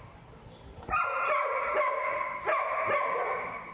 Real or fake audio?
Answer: real